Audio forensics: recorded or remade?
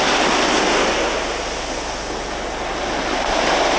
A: recorded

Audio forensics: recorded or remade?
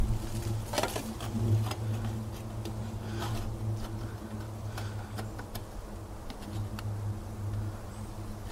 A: recorded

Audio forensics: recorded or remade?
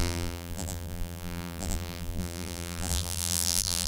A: remade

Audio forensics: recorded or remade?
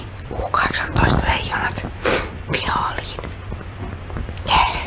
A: recorded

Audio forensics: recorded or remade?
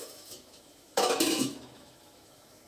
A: remade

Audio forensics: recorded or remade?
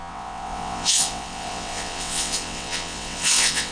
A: remade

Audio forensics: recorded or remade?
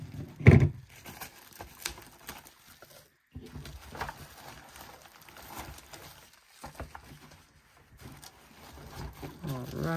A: recorded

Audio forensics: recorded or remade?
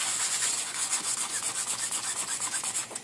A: remade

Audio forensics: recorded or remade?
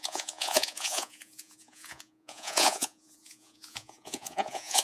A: remade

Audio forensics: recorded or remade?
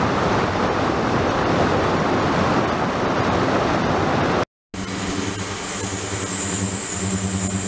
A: recorded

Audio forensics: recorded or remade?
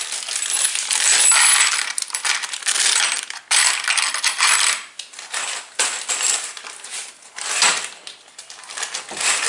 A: recorded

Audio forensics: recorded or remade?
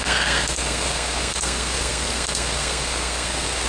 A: remade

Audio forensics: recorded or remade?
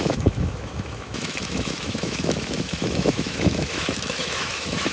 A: remade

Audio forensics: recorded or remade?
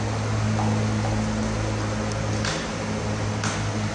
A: recorded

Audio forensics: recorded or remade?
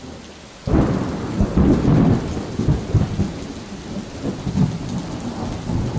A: recorded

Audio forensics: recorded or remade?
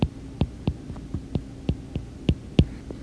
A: recorded